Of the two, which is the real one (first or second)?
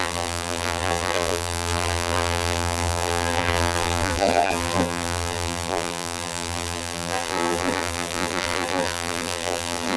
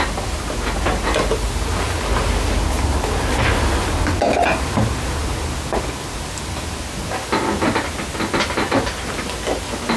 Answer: second